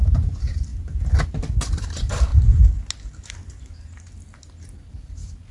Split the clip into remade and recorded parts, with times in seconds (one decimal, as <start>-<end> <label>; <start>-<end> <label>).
0.0-0.7 remade; 0.7-1.8 recorded; 1.8-2.3 remade; 2.3-4.9 recorded; 4.9-5.5 remade